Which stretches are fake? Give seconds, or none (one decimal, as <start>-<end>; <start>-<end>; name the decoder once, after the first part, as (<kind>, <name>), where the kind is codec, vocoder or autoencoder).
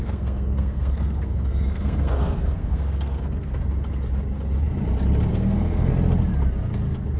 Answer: 0.0-3.6 (codec, SNAC); 5.3-5.9